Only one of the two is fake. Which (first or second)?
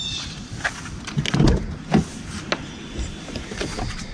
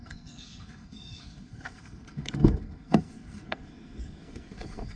second